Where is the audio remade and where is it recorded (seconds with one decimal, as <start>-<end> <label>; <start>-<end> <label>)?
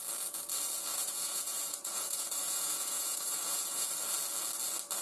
0.0-0.9 recorded; 0.9-3.9 remade; 3.9-5.0 recorded